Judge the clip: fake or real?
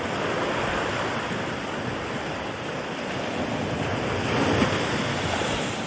real